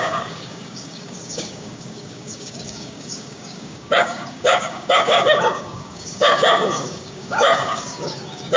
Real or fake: fake